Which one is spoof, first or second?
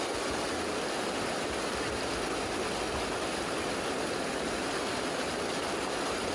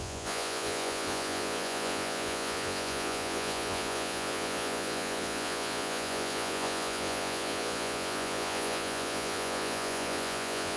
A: second